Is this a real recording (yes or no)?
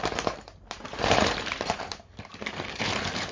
no